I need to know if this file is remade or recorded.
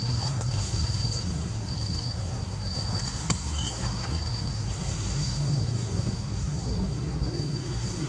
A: remade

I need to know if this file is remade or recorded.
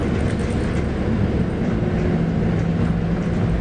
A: recorded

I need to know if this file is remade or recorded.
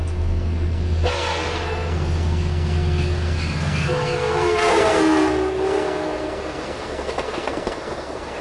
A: remade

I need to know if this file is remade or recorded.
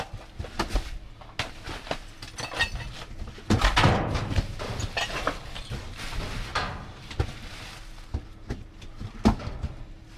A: recorded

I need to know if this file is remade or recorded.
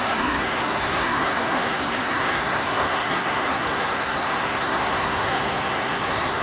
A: remade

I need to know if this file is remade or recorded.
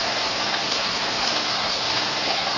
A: remade